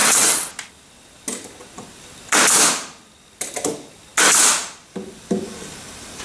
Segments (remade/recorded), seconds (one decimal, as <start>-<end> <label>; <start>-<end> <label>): 0.0-0.5 remade; 0.5-6.2 recorded